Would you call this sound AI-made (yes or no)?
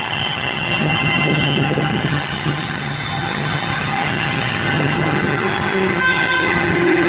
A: yes